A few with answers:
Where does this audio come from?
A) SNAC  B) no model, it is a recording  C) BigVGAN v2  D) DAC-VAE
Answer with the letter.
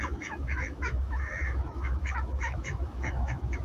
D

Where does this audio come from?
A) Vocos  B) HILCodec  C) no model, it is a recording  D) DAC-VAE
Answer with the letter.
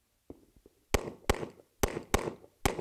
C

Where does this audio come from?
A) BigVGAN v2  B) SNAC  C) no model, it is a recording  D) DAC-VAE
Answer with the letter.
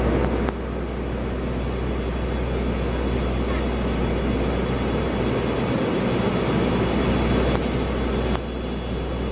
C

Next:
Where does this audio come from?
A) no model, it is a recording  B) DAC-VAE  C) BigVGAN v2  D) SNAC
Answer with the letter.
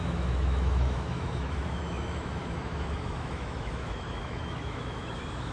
B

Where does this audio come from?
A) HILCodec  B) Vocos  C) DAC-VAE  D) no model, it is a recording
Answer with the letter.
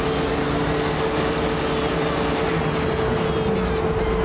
D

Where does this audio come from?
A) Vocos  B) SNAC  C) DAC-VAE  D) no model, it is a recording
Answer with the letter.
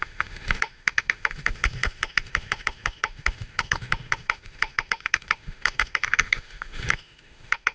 C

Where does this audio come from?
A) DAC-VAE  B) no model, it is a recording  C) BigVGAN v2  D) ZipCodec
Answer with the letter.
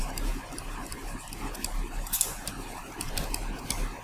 B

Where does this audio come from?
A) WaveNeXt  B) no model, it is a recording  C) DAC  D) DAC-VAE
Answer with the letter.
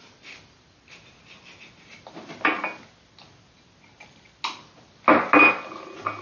B